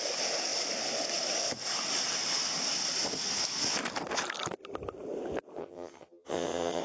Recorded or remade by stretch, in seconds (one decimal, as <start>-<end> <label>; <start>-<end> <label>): 0.0-5.6 recorded; 5.6-6.8 remade